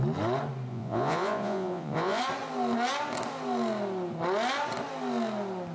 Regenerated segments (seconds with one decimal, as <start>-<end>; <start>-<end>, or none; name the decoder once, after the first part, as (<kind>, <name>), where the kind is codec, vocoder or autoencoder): 0.7-2.2 (vocoder, Vocos)